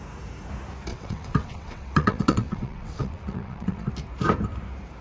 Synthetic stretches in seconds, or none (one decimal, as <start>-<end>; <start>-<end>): 0.9-3.9